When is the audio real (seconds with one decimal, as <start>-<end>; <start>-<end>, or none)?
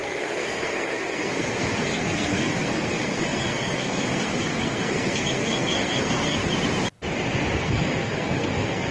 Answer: 6.4-7.6